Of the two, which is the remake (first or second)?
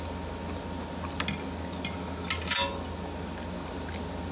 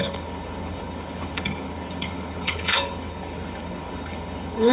second